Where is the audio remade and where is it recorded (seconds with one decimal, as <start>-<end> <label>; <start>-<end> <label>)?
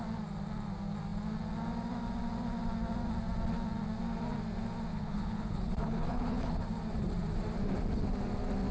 0.0-4.9 recorded; 4.9-6.6 remade; 6.6-8.7 recorded